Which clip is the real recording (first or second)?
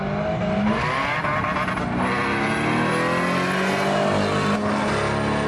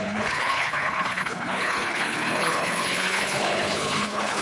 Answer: first